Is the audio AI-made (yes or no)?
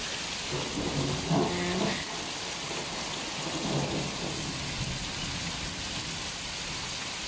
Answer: no